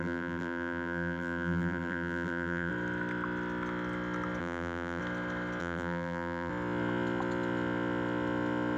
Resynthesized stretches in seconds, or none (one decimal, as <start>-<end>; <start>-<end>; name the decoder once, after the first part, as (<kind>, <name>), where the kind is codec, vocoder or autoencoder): 0.0-2.7 (vocoder, BigVGAN v2); 4.4-5.0; 5.6-6.5